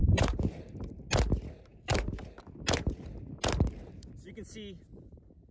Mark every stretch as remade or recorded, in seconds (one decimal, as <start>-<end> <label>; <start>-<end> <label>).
0.0-1.0 remade; 1.0-1.7 recorded; 1.7-2.4 remade; 2.4-5.5 recorded